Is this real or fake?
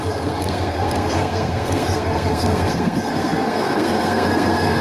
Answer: fake